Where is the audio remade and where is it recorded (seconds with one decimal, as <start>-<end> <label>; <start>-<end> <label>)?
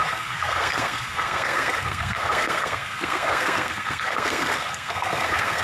0.0-5.6 remade